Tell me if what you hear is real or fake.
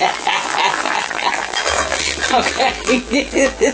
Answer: fake